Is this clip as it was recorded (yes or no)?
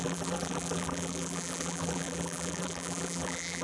no